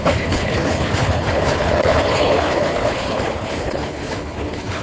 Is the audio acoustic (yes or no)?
no